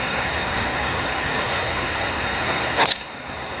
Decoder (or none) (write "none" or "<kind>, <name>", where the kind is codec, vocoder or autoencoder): codec, SNAC